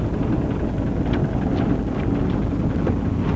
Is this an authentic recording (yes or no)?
yes